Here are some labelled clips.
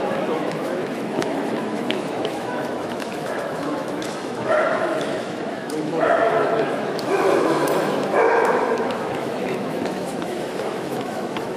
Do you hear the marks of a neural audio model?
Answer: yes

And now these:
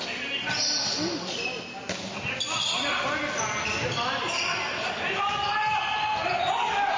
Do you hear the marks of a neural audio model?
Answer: no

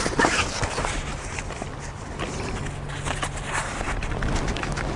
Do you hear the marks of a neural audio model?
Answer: no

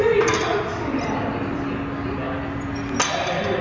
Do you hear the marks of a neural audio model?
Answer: no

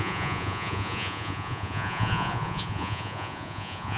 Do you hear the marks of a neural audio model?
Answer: yes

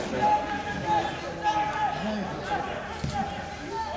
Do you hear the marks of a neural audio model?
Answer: no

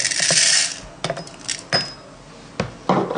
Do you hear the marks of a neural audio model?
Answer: no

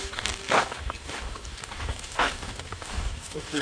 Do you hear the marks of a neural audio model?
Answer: yes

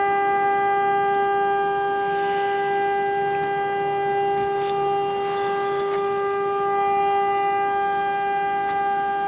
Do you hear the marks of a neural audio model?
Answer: no